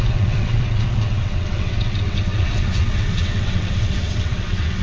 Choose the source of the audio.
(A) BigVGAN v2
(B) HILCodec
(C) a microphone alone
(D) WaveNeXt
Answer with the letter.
D